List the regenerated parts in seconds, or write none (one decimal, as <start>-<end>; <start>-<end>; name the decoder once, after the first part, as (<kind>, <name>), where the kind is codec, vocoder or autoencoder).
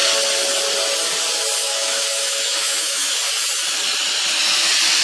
1.6-3.1 (autoencoder, DAC-VAE)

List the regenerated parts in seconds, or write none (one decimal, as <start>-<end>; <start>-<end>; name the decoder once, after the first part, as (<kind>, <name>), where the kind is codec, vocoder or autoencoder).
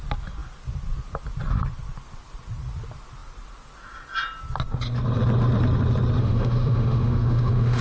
6.2-7.8 (autoencoder, DAC-VAE)